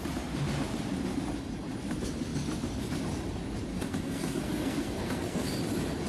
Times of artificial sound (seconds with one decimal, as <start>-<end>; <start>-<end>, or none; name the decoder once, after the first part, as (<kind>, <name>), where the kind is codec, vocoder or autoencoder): 3.7-5.5 (codec, SNAC)